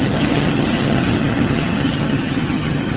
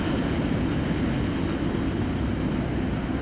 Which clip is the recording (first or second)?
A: second